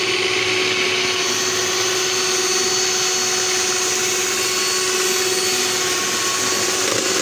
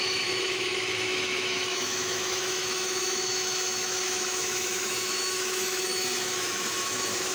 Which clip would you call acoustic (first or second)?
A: first